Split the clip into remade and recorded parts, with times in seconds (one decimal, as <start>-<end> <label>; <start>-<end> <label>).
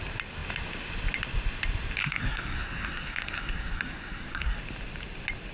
0.0-2.0 recorded; 2.0-4.6 remade; 4.6-5.5 recorded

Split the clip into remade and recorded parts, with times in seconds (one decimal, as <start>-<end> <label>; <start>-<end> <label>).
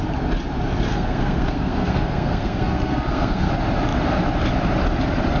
0.0-0.9 recorded; 0.9-3.5 remade; 3.5-5.4 recorded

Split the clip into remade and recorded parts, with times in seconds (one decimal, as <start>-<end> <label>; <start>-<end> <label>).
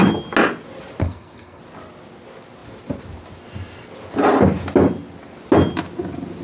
0.0-1.0 recorded; 1.0-1.6 remade; 1.6-6.4 recorded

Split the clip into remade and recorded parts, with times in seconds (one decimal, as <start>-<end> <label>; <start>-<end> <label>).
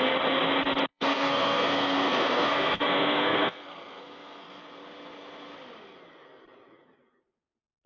0.0-0.9 recorded; 0.9-4.6 remade; 4.6-7.9 recorded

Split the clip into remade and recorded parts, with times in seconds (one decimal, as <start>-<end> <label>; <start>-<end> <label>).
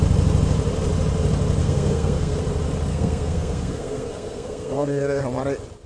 0.0-1.6 recorded; 1.6-2.4 remade; 2.4-2.9 recorded; 2.9-5.2 remade; 5.2-5.9 recorded